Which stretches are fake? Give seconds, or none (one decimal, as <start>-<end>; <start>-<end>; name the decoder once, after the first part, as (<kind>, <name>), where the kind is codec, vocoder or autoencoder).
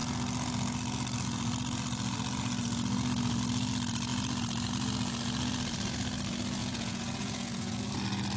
6.6-7.8 (vocoder, Vocos)